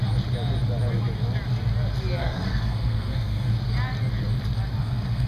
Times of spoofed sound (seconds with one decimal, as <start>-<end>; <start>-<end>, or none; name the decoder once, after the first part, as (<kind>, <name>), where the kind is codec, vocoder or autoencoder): 2.2-3.5 (codec, SNAC); 4.8-5.3